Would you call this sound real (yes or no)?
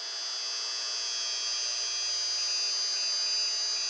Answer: yes